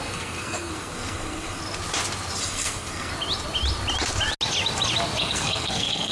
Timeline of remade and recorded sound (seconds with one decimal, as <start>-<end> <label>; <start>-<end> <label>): 0.0-1.6 remade; 1.6-2.4 recorded; 2.4-3.1 remade; 3.1-5.2 recorded; 5.2-6.1 remade